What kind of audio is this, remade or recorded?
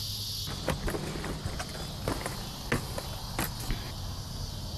recorded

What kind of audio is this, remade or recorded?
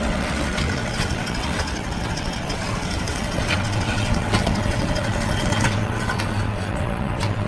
remade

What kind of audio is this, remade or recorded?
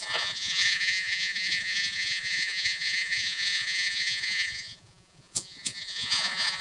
remade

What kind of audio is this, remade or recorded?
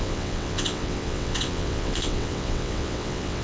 remade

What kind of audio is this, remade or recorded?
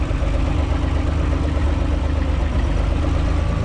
recorded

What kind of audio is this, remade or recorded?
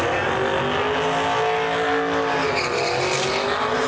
recorded